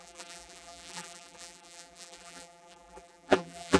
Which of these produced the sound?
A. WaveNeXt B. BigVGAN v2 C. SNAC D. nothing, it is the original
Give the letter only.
B